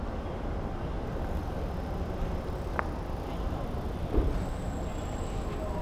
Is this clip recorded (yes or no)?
yes